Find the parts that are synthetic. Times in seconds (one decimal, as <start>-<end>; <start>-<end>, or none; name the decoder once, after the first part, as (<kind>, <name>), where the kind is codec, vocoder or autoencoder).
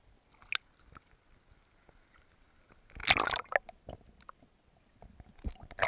none